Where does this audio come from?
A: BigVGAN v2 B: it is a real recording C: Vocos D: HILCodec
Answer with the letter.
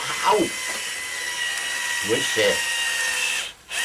B